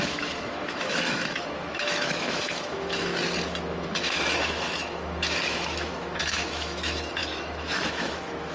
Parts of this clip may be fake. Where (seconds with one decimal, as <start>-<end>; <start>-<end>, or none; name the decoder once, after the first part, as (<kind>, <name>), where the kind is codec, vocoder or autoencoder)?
0.0-3.1 (autoencoder, DAC-VAE); 3.6-8.5